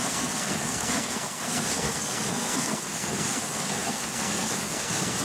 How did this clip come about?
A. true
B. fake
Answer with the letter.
B